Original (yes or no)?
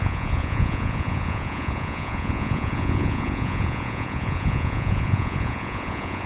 no